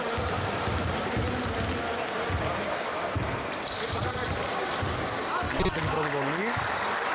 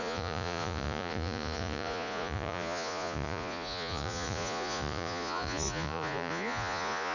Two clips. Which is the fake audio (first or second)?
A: second